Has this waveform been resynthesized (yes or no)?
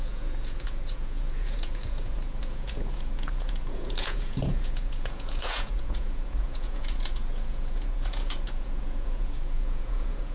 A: yes